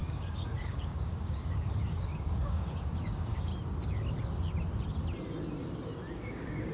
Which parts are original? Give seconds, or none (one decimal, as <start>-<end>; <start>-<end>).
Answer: 3.5-6.1